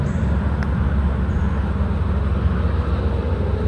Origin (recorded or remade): recorded